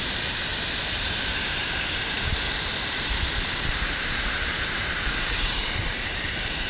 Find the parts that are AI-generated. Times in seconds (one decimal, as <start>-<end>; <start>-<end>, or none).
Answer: 0.0-2.3; 3.7-6.7